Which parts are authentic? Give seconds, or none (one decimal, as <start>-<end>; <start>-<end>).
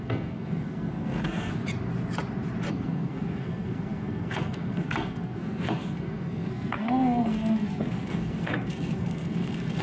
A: 1.6-2.7